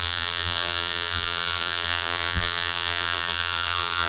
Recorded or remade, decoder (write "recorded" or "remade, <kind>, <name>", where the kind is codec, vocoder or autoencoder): remade, vocoder, BigVGAN v2